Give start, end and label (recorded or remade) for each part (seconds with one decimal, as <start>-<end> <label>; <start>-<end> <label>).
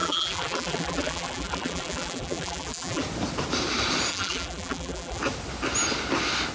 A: 0.0-3.0 remade; 3.0-4.1 recorded; 4.1-5.2 remade; 5.2-6.5 recorded